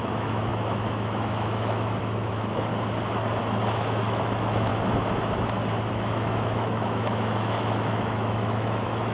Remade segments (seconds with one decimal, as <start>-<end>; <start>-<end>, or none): 0.0-2.7; 3.4-4.7; 5.9-9.1